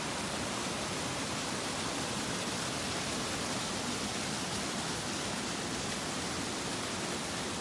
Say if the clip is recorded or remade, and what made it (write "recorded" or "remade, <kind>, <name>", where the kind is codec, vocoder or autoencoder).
recorded